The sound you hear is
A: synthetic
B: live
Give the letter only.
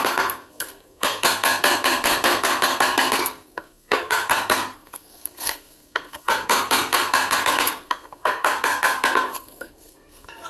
A